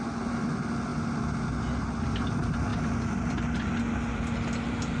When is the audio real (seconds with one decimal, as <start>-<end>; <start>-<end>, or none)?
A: 0.0-5.0